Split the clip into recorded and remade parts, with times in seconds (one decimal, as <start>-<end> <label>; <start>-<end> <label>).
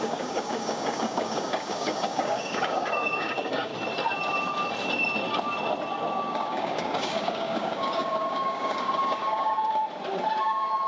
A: 0.0-3.7 remade; 3.7-6.3 recorded; 6.3-9.8 remade; 9.8-10.4 recorded; 10.4-10.9 remade